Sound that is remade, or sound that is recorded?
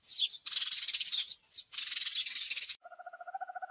recorded